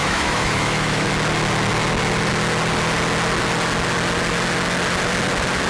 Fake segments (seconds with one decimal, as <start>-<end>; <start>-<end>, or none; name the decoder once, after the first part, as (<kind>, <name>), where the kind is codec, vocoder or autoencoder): 0.0-1.1 (autoencoder, DAC-VAE)